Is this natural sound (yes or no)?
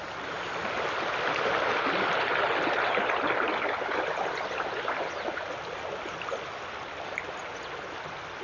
yes